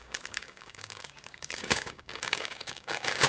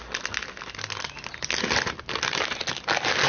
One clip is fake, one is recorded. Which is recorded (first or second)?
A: second